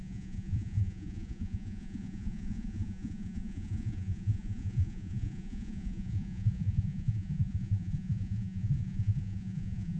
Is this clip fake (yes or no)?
yes